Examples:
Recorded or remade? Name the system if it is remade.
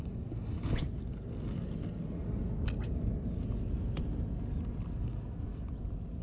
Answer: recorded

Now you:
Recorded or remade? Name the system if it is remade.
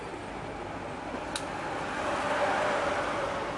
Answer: recorded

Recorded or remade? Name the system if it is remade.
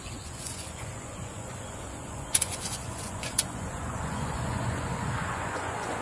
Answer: remade, vocoder, Vocos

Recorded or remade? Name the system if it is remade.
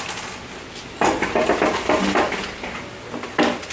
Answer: recorded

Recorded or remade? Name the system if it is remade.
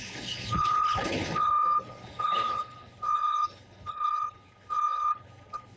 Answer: remade, codec, HILCodec